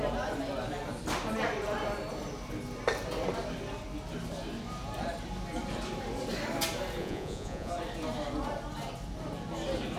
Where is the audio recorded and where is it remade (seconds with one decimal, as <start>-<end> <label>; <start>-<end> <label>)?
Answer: 0.0-7.0 recorded; 7.0-7.7 remade; 7.7-10.0 recorded